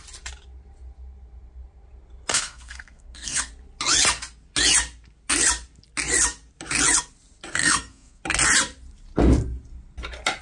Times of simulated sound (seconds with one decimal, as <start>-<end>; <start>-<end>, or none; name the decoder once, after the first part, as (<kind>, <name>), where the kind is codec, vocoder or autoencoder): 2.3-3.5 (codec, SNAC); 7.6-8.2